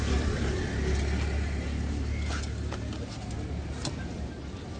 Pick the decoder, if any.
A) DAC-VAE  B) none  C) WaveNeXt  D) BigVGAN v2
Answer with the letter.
B